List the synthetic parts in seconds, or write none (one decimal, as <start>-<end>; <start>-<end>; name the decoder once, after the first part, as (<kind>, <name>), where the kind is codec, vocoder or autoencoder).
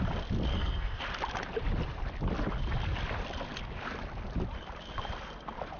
0.5-1.0 (codec, SNAC)